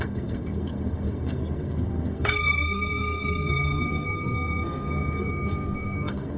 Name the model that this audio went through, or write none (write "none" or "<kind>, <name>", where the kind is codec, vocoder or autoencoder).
codec, SNAC